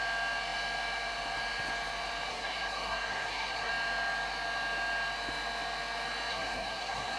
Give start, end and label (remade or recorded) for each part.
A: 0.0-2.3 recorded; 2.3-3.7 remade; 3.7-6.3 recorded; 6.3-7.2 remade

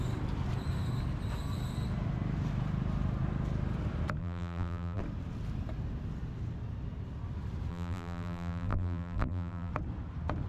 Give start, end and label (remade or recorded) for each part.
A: 0.0-4.2 recorded; 4.2-5.0 remade; 5.0-7.7 recorded; 7.7-9.7 remade; 9.7-10.5 recorded

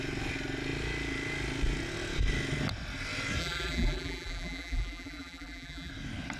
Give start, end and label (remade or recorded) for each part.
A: 0.0-3.4 recorded; 3.4-5.9 remade; 5.9-6.4 recorded

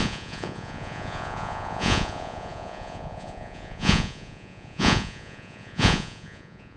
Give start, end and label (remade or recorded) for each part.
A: 0.0-6.8 remade

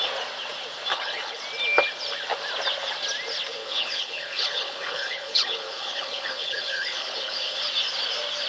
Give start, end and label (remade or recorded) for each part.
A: 0.0-0.9 recorded; 0.9-1.4 remade; 1.4-3.6 recorded; 3.6-7.6 remade; 7.6-8.5 recorded

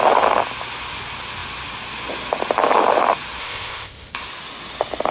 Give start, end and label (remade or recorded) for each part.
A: 0.0-3.4 recorded; 3.4-4.1 remade; 4.1-5.1 recorded

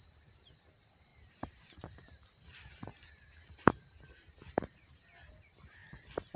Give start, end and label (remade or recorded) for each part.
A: 0.0-5.8 remade; 5.8-6.4 recorded

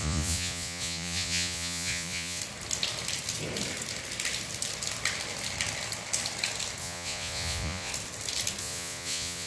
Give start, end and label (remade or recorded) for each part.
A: 0.0-2.4 remade; 2.4-6.8 recorded; 6.8-7.9 remade; 7.9-8.6 recorded; 8.6-9.5 remade